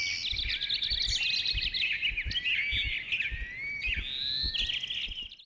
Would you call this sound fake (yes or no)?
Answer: no